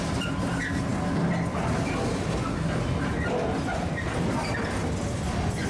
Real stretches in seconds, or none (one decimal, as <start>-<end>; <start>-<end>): 0.0-5.7